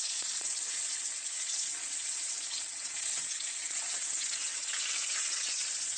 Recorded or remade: remade